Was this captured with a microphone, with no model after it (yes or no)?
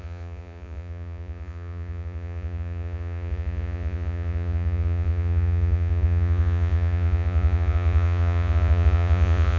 no